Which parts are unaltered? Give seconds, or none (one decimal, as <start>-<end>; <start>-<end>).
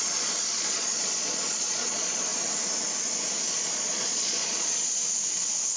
2.3-3.5; 5.0-5.8